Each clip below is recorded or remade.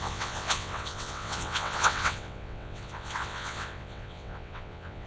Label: remade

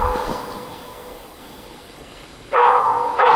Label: remade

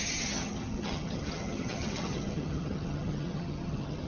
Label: remade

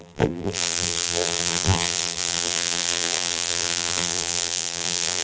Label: remade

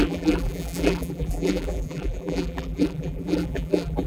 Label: remade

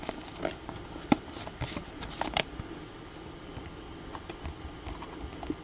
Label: remade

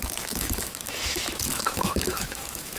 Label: remade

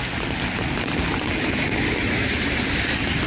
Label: recorded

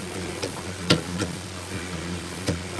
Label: remade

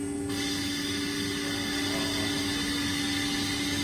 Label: recorded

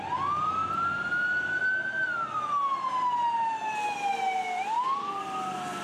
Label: recorded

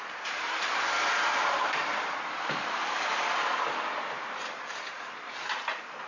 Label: remade